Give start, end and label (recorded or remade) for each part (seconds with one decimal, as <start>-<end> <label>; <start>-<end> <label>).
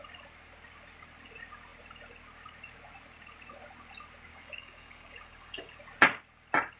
0.0-4.3 recorded; 4.3-5.8 remade; 5.8-6.8 recorded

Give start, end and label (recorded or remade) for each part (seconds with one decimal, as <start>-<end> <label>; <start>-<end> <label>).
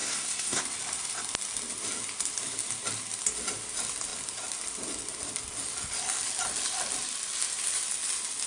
0.0-0.6 remade; 0.6-8.5 recorded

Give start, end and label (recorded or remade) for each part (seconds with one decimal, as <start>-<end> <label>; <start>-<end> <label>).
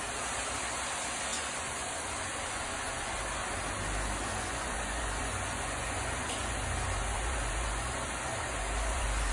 0.0-1.3 recorded; 1.3-3.5 remade; 3.5-4.3 recorded; 4.3-9.3 remade